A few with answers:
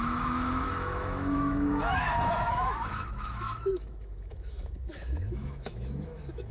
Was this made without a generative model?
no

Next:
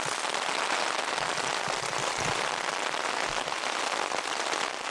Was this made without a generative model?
yes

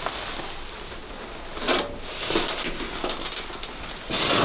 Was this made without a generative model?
yes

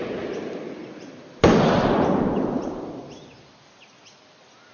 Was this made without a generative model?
yes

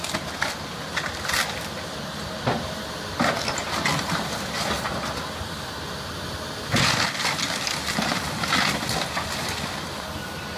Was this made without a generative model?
yes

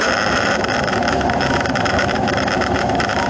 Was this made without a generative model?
no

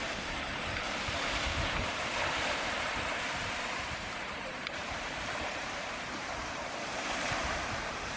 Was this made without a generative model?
no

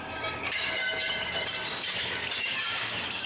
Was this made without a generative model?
no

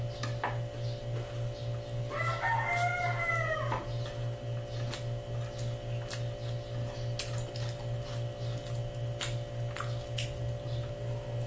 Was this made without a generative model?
yes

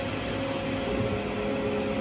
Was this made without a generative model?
yes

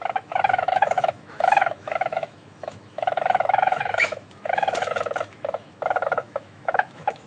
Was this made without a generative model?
no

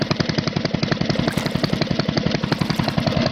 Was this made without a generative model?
no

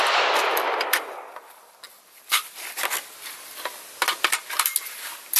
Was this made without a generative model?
yes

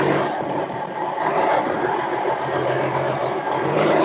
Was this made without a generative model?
no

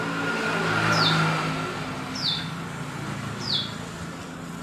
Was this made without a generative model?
yes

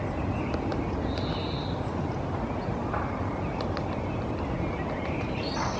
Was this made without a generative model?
yes